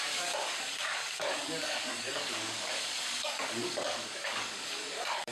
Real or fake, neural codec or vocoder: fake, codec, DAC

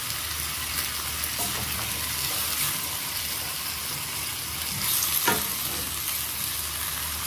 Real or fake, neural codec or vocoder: real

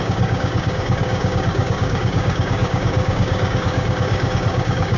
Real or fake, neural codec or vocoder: fake, codec, DAC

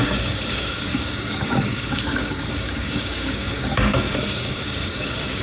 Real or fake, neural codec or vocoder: fake, codec, DAC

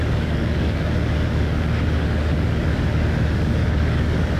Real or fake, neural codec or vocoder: fake, codec, DAC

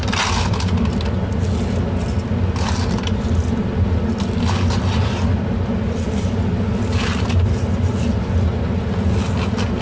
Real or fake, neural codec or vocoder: real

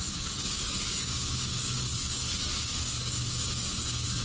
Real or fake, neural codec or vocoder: fake, codec, DAC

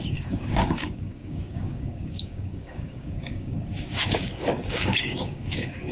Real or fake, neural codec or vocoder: fake, codec, DAC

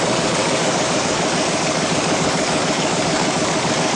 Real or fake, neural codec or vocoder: fake, codec, DAC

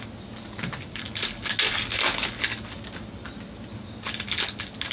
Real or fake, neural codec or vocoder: real